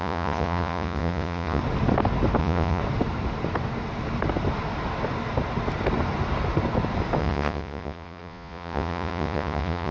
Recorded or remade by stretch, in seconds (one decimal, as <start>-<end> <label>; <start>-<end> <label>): 0.0-1.6 remade; 1.6-2.4 recorded; 2.4-2.8 remade; 2.8-7.2 recorded; 7.2-9.9 remade